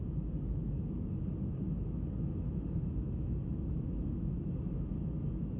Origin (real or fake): fake